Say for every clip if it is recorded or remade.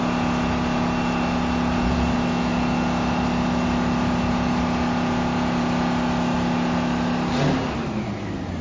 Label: recorded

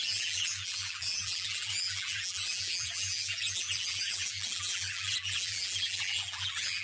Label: remade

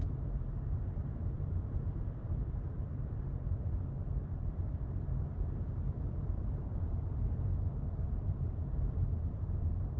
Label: remade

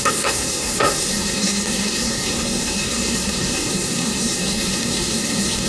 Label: remade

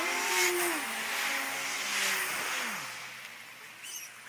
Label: recorded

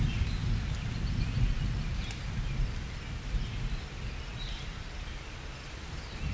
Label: recorded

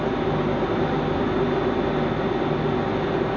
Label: recorded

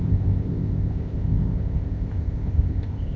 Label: remade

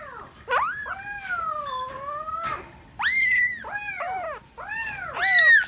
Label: recorded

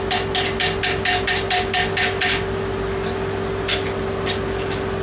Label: recorded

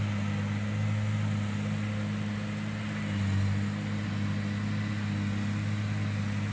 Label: recorded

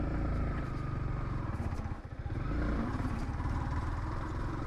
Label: remade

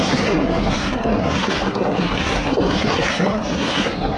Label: remade